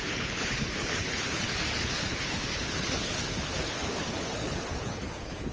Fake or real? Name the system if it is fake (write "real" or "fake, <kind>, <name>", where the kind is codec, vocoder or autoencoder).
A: fake, codec, HILCodec